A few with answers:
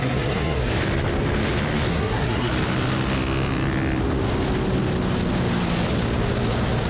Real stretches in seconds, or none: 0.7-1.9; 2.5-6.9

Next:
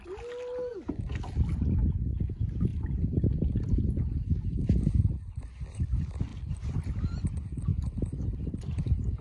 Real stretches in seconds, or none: 0.0-9.2

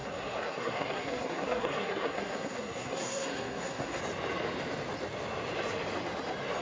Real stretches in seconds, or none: 4.0-6.6

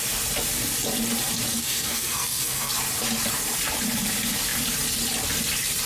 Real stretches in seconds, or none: 0.0-1.6; 2.7-5.9

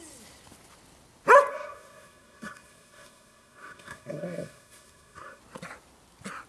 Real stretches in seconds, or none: 0.0-1.5; 5.4-6.5

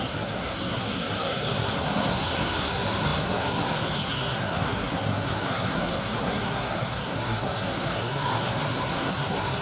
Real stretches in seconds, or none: none

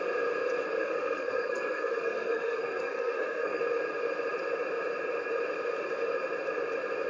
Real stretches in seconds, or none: 0.0-0.8; 3.6-7.1

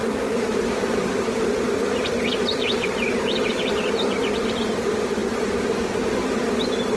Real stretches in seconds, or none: 0.0-7.0